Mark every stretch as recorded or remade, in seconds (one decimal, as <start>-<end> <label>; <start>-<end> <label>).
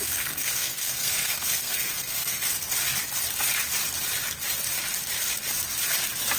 0.0-2.5 remade; 2.5-6.4 recorded